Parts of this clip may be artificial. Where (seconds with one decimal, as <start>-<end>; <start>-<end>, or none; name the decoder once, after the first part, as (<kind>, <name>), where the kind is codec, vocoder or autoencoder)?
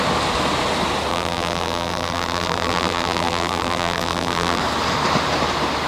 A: 1.1-4.6 (vocoder, BigVGAN v2)